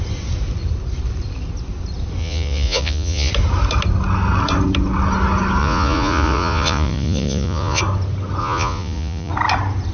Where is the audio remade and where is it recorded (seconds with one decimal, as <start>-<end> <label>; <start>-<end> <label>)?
0.0-2.2 recorded; 2.2-3.3 remade; 3.3-5.6 recorded; 5.6-7.8 remade; 7.8-8.4 recorded; 8.4-9.3 remade; 9.3-9.9 recorded

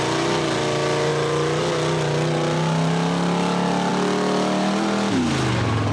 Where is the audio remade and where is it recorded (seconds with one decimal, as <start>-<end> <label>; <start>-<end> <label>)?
0.0-5.9 recorded

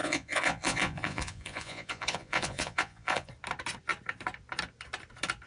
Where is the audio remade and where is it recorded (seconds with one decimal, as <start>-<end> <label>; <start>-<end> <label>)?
0.0-3.3 remade; 3.3-5.5 recorded

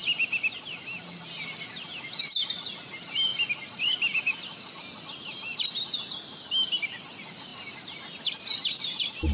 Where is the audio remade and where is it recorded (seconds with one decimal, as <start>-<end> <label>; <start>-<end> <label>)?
0.0-9.3 recorded

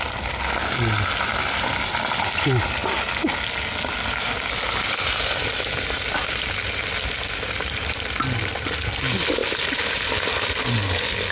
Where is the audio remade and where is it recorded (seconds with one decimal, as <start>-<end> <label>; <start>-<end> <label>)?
0.0-11.3 recorded

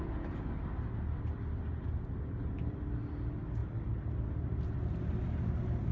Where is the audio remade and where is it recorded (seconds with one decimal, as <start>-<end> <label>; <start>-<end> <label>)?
0.0-5.9 recorded

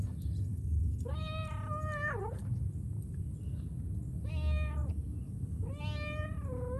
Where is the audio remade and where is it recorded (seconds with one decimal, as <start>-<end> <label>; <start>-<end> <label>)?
0.0-0.5 recorded; 0.5-1.1 remade; 1.1-6.8 recorded

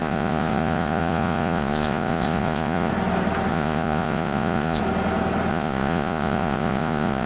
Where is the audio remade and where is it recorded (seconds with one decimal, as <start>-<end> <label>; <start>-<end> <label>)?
0.0-2.9 remade; 2.9-3.5 recorded; 3.5-4.8 remade; 4.8-5.5 recorded; 5.5-7.3 remade